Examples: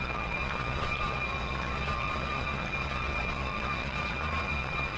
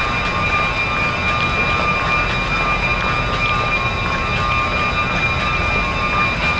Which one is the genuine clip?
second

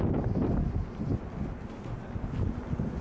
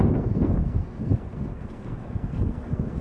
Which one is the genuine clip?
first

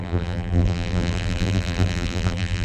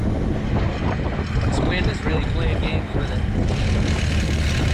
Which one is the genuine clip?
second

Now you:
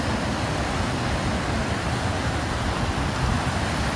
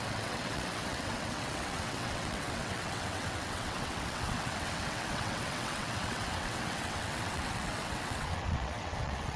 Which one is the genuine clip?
first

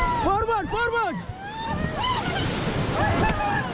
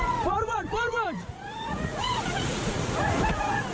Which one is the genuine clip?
first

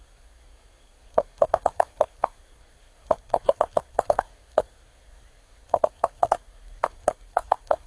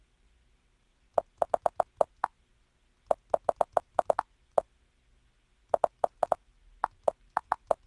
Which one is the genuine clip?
second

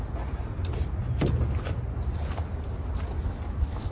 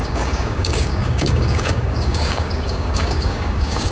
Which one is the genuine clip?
first